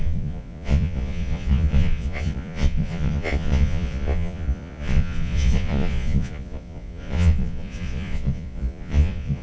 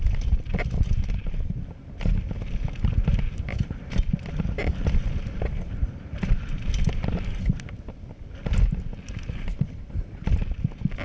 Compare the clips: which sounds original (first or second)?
second